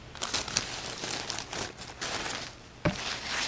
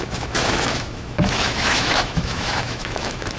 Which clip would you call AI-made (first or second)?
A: second